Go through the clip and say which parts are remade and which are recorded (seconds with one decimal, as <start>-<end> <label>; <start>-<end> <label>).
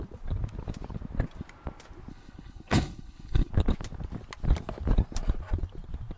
0.0-2.1 recorded; 2.1-3.5 remade; 3.5-6.2 recorded